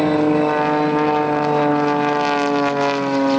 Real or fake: real